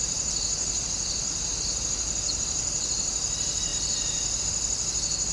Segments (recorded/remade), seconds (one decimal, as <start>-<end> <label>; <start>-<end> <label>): 0.0-5.3 recorded